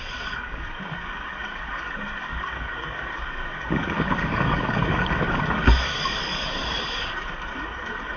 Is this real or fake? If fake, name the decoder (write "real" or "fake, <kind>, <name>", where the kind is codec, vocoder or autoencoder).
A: fake, codec, DAC